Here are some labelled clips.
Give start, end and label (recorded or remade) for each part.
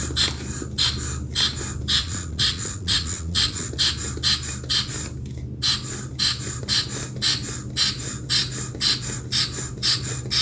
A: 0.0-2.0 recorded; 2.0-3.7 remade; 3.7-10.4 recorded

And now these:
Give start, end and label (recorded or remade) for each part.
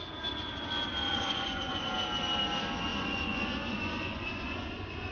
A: 0.0-1.1 recorded; 1.1-1.9 remade; 1.9-2.9 recorded; 2.9-5.1 remade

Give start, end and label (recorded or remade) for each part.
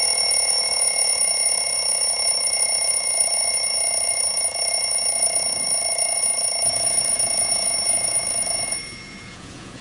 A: 0.0-9.8 remade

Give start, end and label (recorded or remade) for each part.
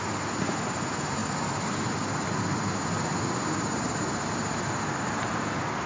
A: 0.0-5.9 recorded